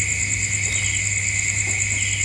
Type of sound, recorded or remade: recorded